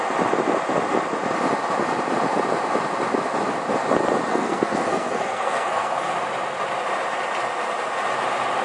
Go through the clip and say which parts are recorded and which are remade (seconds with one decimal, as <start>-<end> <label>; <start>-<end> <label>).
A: 0.0-4.3 recorded; 4.3-6.1 remade; 6.1-8.6 recorded